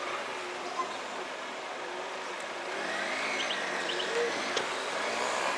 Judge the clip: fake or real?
real